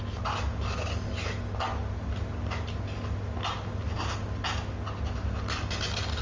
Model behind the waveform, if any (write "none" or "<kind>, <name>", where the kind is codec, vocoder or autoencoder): none